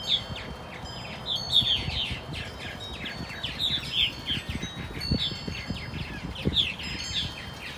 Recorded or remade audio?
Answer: recorded